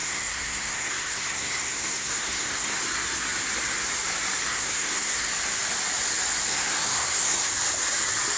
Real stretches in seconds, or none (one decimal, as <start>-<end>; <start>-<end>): 2.8-4.5; 5.3-6.5; 7.5-8.4